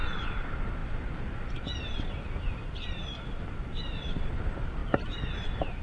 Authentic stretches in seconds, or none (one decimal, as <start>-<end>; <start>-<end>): 0.0-5.8